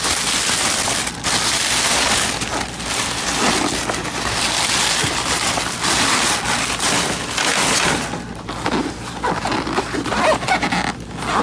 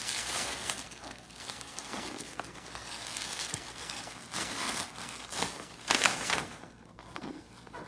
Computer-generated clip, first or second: second